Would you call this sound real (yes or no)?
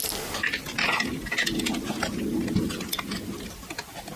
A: yes